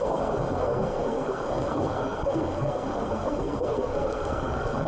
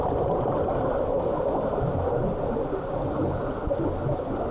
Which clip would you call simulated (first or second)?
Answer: first